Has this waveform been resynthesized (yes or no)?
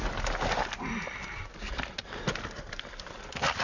no